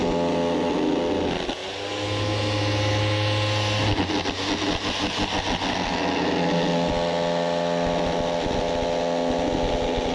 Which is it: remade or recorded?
recorded